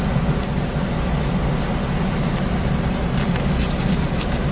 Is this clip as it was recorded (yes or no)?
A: yes